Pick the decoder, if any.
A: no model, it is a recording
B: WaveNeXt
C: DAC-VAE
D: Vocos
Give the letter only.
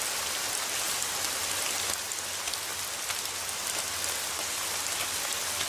A